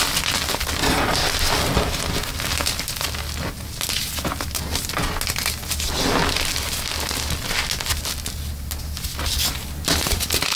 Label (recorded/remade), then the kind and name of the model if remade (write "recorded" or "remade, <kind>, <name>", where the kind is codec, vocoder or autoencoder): recorded